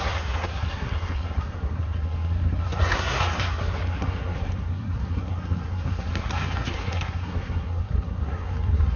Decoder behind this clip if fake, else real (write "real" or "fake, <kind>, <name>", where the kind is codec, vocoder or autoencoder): fake, codec, SNAC